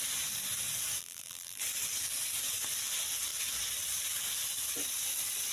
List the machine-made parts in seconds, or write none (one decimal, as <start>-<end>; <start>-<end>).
1.0-1.6